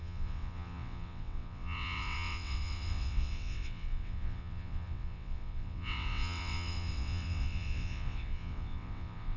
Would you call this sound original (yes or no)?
no